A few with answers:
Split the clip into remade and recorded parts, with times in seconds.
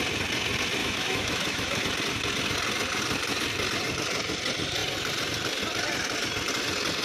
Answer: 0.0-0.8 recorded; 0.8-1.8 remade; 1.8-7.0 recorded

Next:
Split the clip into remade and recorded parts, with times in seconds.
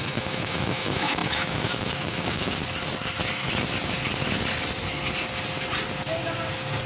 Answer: 0.0-2.6 remade; 2.6-6.9 recorded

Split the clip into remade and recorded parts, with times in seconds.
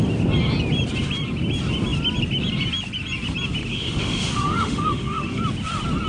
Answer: 0.0-3.7 recorded; 3.7-5.4 remade; 5.4-6.1 recorded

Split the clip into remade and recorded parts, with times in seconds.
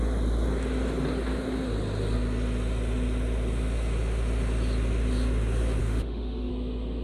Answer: 0.0-5.8 recorded; 5.8-6.5 remade; 6.5-7.0 recorded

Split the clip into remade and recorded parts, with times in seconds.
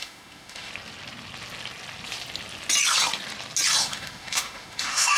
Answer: 0.0-0.7 remade; 0.7-3.8 recorded; 3.8-5.2 remade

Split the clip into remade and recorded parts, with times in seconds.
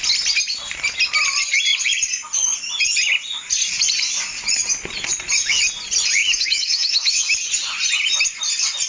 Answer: 0.0-6.2 recorded; 6.2-7.3 remade; 7.3-8.9 recorded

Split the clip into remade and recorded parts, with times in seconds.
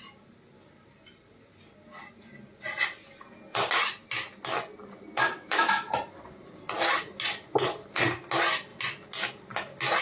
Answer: 0.0-5.2 recorded; 5.2-5.9 remade; 5.9-10.0 recorded